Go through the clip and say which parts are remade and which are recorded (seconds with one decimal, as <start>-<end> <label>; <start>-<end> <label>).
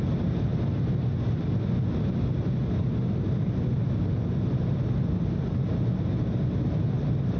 0.0-7.4 recorded